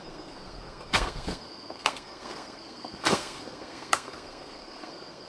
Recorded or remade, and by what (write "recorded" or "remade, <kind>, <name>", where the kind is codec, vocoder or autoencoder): remade, codec, SNAC